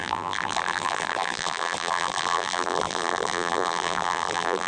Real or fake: fake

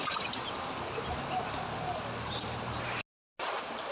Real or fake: real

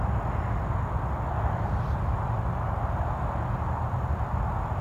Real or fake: real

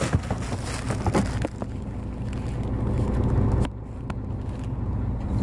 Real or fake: real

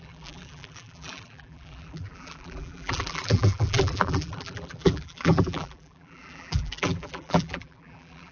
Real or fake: fake